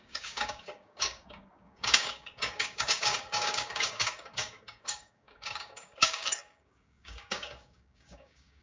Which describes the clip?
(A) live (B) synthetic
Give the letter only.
B